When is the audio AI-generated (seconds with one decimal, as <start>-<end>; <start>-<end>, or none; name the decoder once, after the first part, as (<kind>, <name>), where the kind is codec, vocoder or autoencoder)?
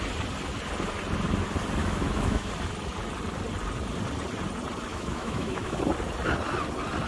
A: 1.8-2.5 (autoencoder, DAC-VAE); 4.9-5.8